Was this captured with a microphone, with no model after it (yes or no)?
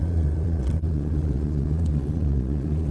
no